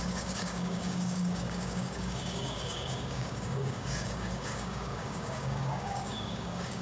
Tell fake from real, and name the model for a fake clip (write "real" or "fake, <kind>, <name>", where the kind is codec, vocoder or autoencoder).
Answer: fake, codec, DAC